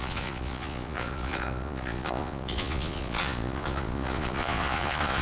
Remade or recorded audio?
remade